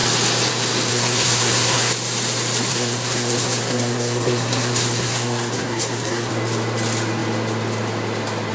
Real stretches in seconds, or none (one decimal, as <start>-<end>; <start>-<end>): 0.0-0.9; 1.9-2.7; 6.3-8.5